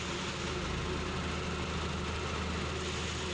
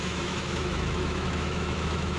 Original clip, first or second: first